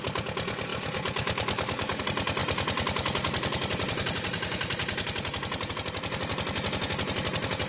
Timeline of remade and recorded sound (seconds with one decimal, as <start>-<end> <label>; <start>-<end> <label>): 0.0-0.7 recorded; 0.7-2.0 remade; 2.0-7.7 recorded